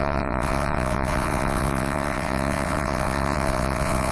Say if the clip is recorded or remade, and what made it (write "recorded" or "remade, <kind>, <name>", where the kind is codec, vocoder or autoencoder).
remade, vocoder, WaveNeXt